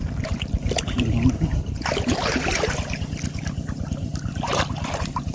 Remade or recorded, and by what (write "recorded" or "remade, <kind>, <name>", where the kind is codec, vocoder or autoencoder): recorded